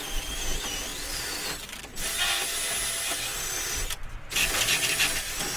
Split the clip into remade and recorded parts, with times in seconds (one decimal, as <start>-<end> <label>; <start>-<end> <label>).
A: 0.0-5.6 recorded